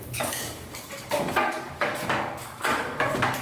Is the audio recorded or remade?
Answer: remade